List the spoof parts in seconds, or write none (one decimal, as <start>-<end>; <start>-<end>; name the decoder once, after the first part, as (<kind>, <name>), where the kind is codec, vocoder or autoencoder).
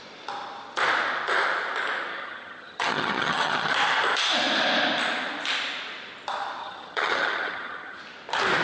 2.1-3.7 (vocoder, HiFi-GAN); 6.6-8.0